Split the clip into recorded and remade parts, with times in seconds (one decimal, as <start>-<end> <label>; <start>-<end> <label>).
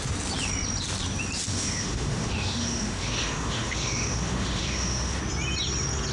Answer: 0.0-1.5 recorded; 1.5-5.2 remade; 5.2-6.1 recorded